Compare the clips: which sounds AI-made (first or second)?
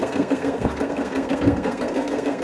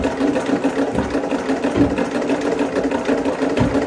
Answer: first